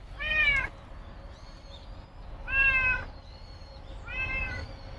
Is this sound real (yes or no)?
yes